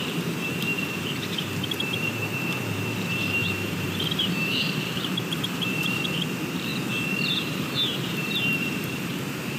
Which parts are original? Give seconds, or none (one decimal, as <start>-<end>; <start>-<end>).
6.7-7.3